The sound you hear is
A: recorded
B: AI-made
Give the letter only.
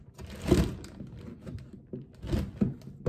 A